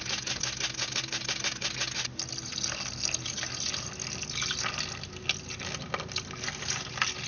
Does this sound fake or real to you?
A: real